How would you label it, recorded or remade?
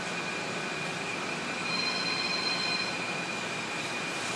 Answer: recorded